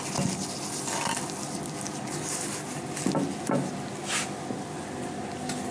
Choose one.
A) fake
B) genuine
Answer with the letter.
B